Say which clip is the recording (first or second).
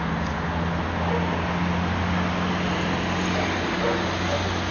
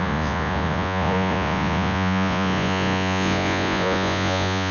first